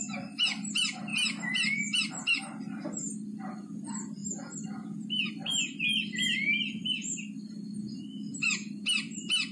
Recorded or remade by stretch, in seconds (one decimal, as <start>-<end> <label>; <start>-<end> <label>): 0.0-9.5 recorded